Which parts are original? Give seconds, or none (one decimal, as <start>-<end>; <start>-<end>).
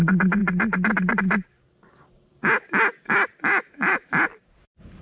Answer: 0.0-3.5; 4.1-5.0